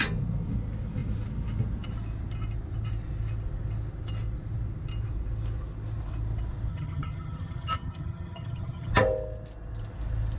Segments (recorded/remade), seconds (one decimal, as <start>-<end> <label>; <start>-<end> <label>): 0.0-6.7 recorded; 6.7-8.9 remade; 8.9-10.4 recorded